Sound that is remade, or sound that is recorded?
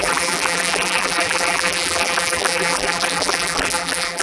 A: remade